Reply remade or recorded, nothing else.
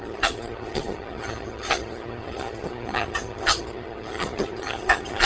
remade